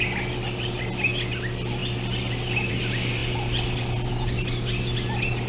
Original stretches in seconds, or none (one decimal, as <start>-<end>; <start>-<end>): 0.0-5.5